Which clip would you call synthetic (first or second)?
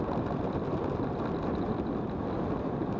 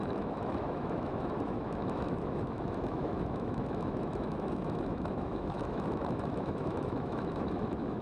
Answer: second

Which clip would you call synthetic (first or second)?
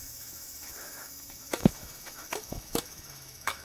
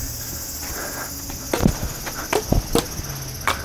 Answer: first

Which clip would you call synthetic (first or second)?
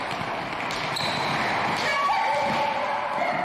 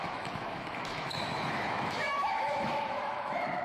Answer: second